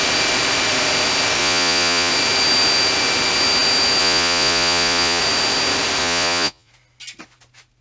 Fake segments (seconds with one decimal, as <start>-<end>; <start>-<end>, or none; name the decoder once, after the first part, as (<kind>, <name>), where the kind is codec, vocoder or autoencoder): 1.4-2.1 (vocoder, Vocos); 4.0-5.2; 6.0-6.7